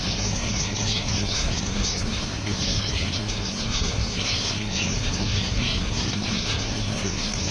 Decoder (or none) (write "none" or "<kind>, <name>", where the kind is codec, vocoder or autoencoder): codec, SNAC